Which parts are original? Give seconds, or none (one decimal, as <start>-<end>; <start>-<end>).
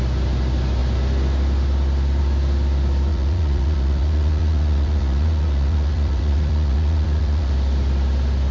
0.0-3.1; 7.5-8.5